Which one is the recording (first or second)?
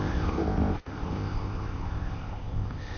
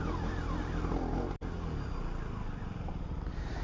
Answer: second